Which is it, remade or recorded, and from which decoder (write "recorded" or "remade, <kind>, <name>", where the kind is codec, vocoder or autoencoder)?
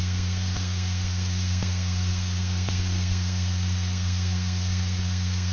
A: remade, codec, SNAC